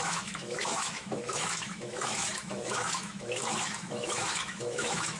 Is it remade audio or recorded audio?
remade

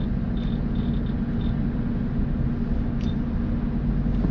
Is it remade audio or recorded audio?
recorded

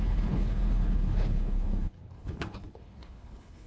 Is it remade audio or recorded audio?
remade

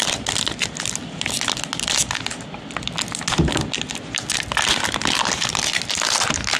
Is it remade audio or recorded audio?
recorded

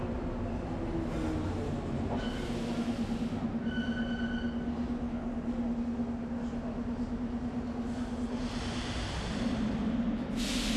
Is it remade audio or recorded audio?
recorded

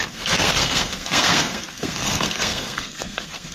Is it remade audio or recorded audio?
remade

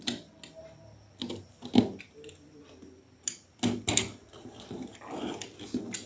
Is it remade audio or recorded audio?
recorded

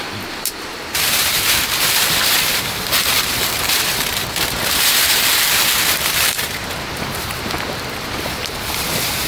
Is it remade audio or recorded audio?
remade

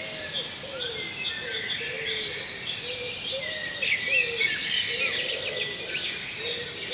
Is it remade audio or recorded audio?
recorded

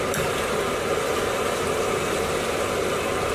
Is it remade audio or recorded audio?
recorded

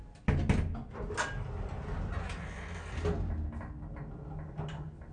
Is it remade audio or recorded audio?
recorded